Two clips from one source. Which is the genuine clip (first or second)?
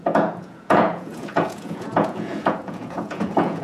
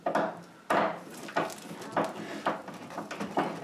second